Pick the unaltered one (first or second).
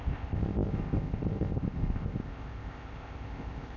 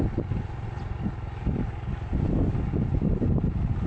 second